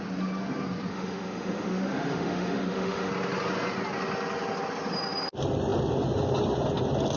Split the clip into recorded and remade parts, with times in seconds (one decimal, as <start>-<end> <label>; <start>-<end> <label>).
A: 0.0-0.9 recorded; 0.9-3.1 remade; 3.1-7.2 recorded